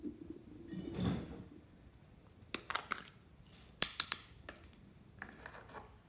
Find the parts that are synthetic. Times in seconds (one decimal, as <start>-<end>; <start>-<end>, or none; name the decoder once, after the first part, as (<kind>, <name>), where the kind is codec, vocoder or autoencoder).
none